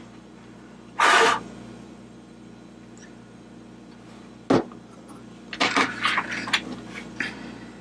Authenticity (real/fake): real